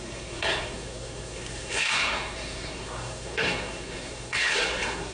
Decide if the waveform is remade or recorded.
remade